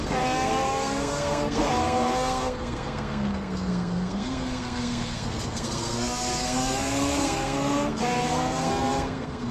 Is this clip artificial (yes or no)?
yes